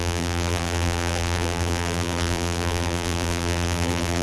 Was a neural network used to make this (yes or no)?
yes